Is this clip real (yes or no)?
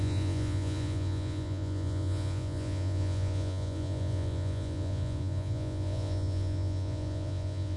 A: no